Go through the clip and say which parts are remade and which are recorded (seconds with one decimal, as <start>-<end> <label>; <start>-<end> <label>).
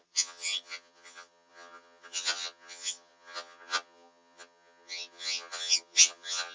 0.0-6.5 remade